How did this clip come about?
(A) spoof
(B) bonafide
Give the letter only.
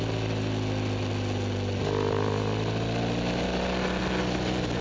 B